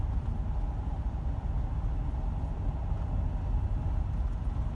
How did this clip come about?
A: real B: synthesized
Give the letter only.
A